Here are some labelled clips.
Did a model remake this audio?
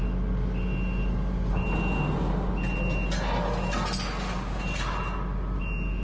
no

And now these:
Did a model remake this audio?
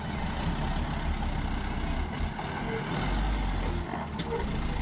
no